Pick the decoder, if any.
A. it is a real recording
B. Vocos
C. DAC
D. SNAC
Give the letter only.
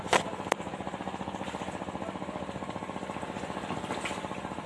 A